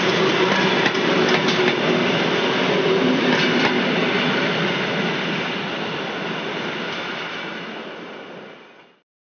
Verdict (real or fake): real